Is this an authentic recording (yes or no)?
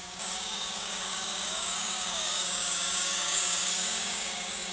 no